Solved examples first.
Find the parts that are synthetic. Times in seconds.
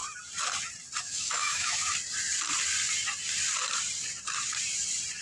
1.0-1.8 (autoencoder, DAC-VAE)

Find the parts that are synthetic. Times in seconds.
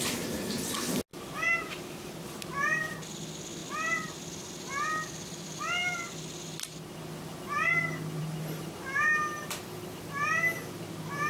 none